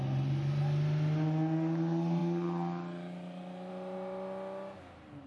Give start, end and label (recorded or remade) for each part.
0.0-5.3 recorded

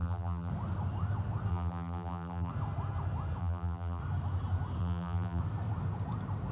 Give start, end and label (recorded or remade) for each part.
0.0-0.5 remade; 0.5-1.5 recorded; 1.5-2.5 remade; 2.5-3.4 recorded; 3.4-4.0 remade; 4.0-4.8 recorded; 4.8-5.4 remade; 5.4-6.5 recorded

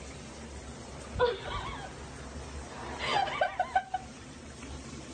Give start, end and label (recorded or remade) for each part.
0.0-3.1 recorded; 3.1-5.1 remade

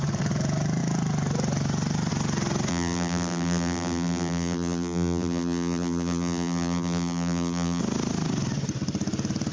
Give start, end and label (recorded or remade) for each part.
0.0-2.7 recorded; 2.7-7.8 remade; 7.8-9.5 recorded